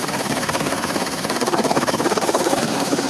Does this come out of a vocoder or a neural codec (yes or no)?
yes